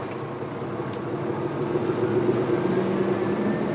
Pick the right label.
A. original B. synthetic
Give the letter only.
A